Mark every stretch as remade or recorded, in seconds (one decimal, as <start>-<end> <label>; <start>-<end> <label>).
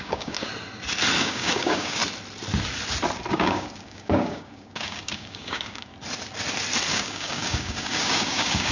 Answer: 0.0-0.5 remade; 0.5-1.2 recorded; 1.2-2.0 remade; 2.0-3.3 recorded; 3.3-5.9 remade; 5.9-6.9 recorded; 6.9-8.7 remade